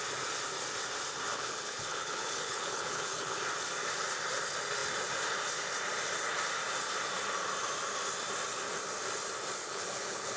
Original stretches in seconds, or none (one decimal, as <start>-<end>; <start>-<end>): 0.0-1.3; 3.4-9.6